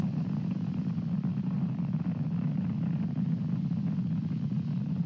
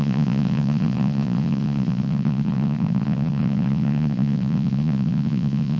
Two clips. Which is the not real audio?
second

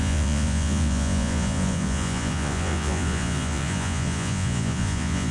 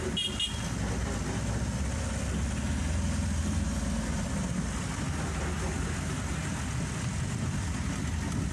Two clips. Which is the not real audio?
first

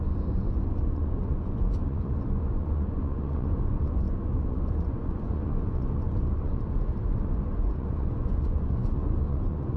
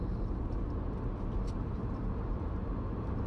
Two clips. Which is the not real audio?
first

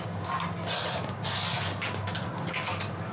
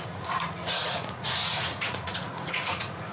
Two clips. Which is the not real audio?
second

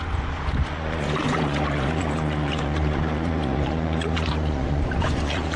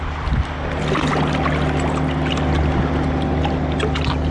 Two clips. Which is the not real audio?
first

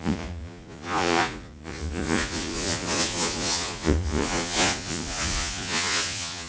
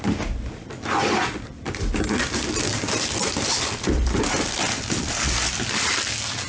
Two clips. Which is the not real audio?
first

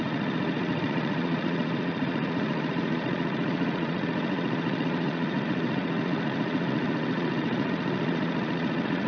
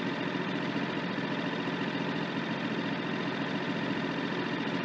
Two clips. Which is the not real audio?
first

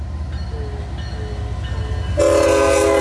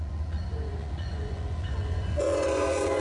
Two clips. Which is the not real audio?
second